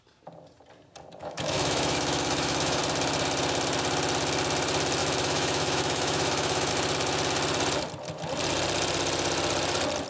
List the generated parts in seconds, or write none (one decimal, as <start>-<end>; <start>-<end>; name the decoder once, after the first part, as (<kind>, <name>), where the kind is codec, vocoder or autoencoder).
1.2-2.8 (autoencoder, DAC-VAE); 5.0-6.7